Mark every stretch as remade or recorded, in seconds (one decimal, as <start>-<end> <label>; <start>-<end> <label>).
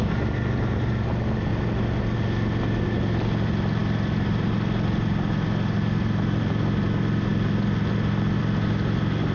0.0-9.3 recorded